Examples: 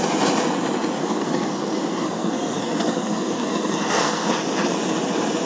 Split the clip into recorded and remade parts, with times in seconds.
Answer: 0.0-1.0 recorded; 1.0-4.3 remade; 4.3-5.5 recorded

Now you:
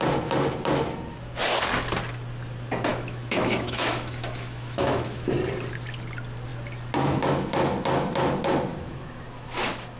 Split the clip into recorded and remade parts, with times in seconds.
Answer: 0.0-2.9 recorded; 2.9-5.3 remade; 5.3-8.7 recorded; 8.7-9.6 remade; 9.6-10.0 recorded

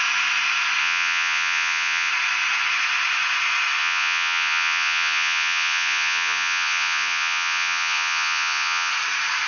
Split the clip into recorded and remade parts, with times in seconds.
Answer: 0.0-0.8 recorded; 0.8-2.1 remade; 2.1-3.8 recorded; 3.8-8.9 remade; 8.9-9.5 recorded

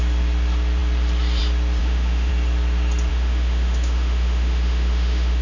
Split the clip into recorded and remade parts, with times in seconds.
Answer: 0.0-1.8 recorded; 1.8-2.3 remade; 2.3-3.1 recorded; 3.1-5.4 remade